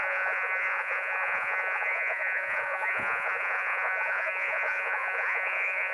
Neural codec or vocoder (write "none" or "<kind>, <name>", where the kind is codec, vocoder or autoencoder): vocoder, Vocos